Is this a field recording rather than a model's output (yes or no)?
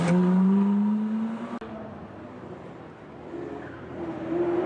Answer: yes